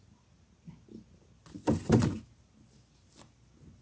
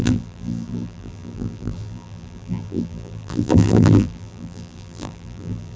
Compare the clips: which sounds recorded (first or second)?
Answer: first